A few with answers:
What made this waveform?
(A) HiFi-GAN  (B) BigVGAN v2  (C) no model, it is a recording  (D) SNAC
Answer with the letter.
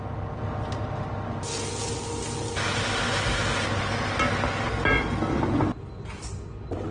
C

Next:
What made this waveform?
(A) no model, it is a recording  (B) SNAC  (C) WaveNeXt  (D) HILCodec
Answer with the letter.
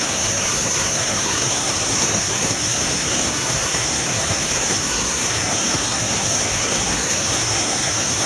B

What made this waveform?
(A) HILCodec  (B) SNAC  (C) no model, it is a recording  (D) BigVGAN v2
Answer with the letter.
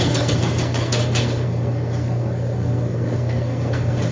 B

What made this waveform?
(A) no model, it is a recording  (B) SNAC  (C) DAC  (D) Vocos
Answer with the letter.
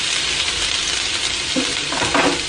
A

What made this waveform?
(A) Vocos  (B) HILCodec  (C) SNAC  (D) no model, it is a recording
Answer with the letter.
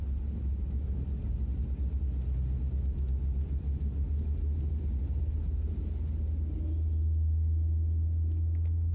D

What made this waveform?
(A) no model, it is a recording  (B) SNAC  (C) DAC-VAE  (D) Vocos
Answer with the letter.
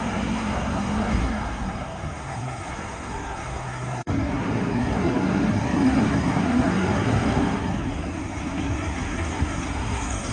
B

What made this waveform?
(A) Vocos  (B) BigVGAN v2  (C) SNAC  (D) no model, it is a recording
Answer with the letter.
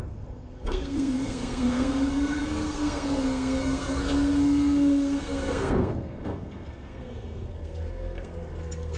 C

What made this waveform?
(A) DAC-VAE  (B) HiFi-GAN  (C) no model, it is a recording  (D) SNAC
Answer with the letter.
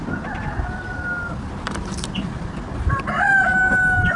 C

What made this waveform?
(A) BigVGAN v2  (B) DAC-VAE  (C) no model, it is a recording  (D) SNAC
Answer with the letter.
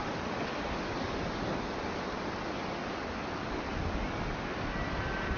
C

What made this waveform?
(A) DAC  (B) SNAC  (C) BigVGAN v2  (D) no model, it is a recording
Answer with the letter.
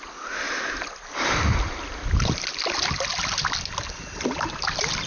D